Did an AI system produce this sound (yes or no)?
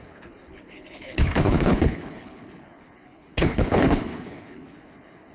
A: yes